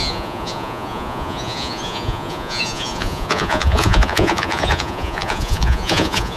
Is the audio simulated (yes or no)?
yes